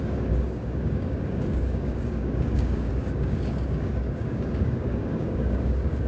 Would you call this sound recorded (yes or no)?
no